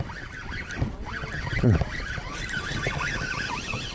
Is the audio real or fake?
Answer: real